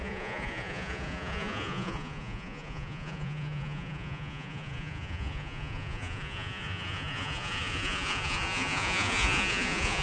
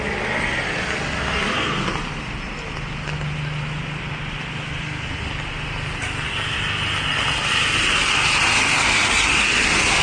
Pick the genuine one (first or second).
second